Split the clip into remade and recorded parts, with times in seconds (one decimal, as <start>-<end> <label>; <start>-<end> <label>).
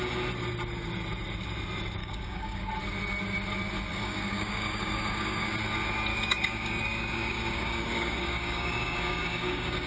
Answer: 0.0-2.0 recorded; 2.0-2.7 remade; 2.7-3.9 recorded; 3.9-5.5 remade; 5.5-6.1 recorded; 6.1-9.9 remade